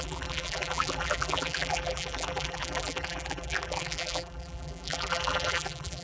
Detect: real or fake fake